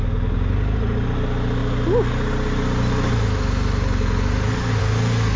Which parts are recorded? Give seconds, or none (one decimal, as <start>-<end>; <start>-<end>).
0.0-5.4